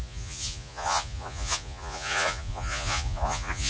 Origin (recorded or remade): remade